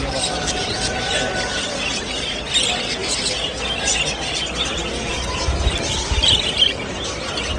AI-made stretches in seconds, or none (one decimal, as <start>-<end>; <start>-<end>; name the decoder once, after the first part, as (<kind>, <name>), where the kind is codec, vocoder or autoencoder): none